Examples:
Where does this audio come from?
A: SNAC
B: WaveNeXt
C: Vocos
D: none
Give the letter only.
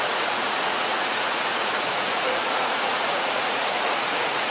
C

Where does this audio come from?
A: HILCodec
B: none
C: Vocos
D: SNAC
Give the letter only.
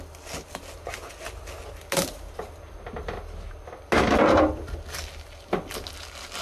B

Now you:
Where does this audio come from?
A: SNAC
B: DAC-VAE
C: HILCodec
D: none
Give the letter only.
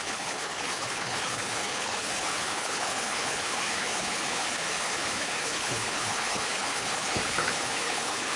C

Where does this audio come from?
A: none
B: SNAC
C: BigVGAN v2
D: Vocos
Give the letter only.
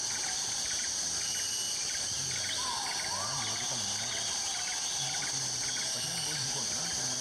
A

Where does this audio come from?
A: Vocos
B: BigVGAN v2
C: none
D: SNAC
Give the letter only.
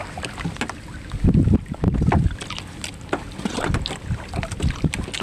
C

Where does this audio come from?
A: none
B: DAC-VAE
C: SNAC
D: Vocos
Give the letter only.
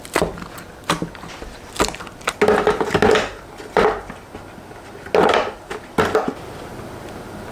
A